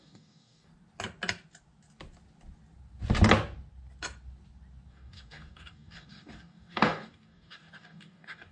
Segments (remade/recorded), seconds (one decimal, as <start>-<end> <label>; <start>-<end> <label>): 0.0-0.7 remade; 0.7-4.9 recorded; 4.9-8.5 remade